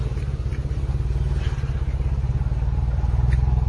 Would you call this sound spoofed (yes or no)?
no